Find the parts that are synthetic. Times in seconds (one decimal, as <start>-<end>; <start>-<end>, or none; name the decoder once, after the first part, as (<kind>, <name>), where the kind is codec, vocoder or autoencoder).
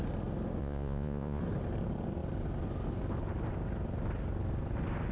0.6-1.4 (vocoder, Vocos)